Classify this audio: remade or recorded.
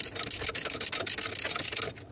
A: recorded